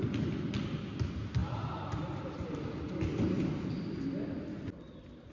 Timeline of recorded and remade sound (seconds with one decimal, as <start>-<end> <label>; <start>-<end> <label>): 0.0-5.3 recorded